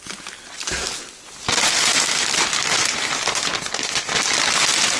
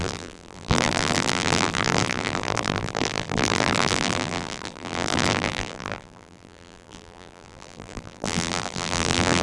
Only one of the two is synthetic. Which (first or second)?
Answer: second